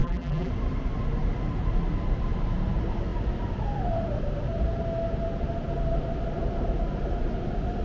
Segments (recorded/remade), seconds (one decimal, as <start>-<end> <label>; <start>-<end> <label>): 0.0-0.5 remade; 0.5-7.8 recorded